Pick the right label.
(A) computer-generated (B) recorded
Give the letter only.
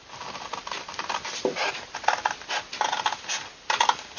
B